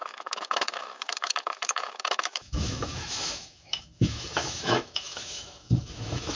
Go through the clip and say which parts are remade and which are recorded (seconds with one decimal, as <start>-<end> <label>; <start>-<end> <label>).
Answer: 0.0-6.3 remade